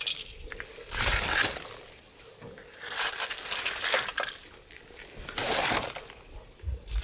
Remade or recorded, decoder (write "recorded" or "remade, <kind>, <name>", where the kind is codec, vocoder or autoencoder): recorded